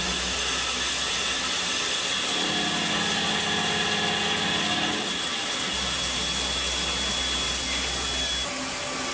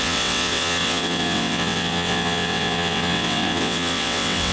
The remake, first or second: second